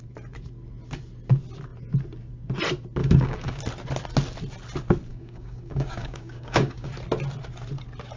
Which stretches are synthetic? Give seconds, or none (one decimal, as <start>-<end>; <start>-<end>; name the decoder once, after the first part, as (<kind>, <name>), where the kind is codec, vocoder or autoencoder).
3.0-3.6 (codec, DAC); 5.1-6.9